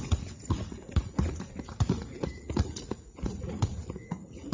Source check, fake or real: fake